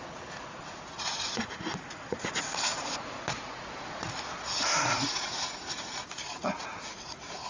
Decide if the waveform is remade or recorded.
remade